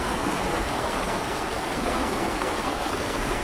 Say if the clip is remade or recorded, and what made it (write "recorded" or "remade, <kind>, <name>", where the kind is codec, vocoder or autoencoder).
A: remade, codec, SNAC